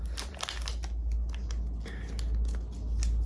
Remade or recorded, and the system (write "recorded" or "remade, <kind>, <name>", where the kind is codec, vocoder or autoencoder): recorded